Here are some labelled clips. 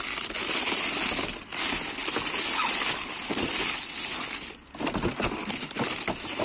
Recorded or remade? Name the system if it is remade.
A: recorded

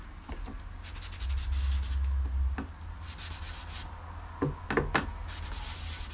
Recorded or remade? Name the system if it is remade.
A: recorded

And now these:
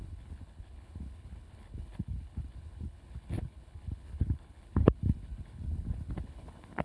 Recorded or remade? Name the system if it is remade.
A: remade, codec, HILCodec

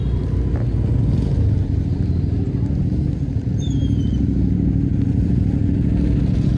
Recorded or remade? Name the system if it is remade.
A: recorded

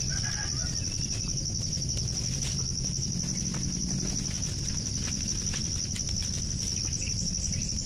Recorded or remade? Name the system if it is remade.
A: recorded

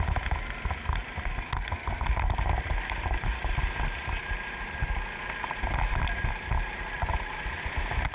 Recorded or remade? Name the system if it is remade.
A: recorded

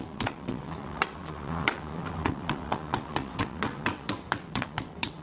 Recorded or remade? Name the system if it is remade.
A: remade, vocoder, WaveNeXt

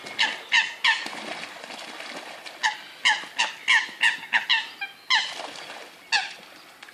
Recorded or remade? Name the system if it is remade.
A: recorded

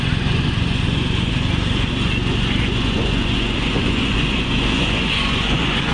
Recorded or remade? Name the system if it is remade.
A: remade, vocoder, Vocos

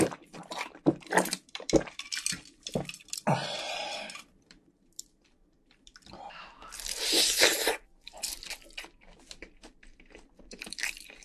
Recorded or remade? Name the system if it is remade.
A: remade, vocoder, BigVGAN v2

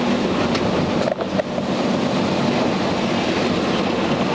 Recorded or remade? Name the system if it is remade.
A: recorded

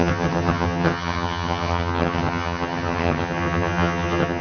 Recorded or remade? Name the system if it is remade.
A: remade, vocoder, HiFi-GAN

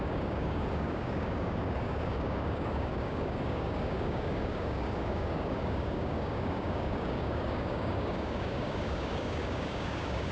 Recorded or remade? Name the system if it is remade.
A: remade, codec, DAC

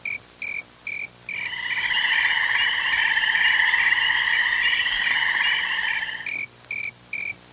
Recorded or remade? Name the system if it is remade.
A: recorded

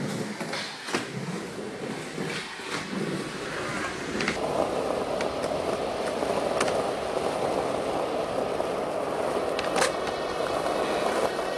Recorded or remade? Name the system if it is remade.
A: recorded